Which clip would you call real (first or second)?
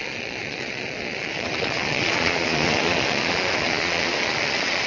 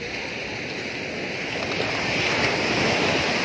second